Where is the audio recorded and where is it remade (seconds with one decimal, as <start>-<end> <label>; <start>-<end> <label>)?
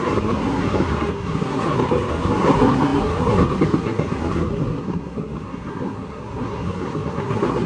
0.0-7.7 remade